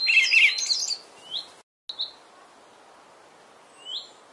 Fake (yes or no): no